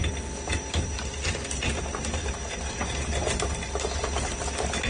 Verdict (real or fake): real